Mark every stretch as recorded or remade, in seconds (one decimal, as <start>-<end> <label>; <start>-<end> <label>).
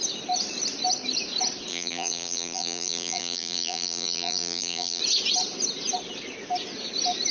0.0-1.7 recorded; 1.7-5.0 remade; 5.0-7.3 recorded